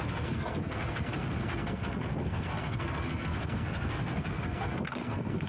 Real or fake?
fake